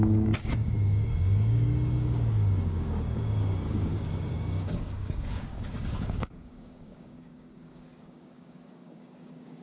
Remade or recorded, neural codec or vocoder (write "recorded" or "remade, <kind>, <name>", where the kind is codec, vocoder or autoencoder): remade, codec, DAC